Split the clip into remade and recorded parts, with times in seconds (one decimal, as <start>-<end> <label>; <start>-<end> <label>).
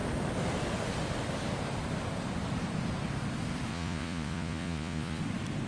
0.0-3.7 recorded; 3.7-5.2 remade; 5.2-5.7 recorded